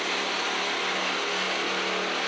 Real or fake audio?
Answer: real